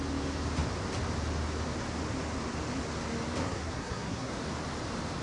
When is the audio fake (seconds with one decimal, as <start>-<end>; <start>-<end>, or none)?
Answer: 3.4-4.3

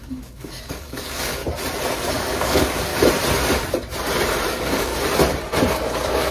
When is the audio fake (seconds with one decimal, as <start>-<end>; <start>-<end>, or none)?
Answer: 0.0-1.4; 2.1-2.9; 4.5-4.9; 5.7-6.3